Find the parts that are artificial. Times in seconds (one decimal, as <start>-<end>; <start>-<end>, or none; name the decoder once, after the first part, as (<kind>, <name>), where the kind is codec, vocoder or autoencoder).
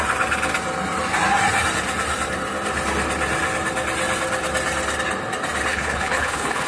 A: 5.7-6.7 (codec, HILCodec)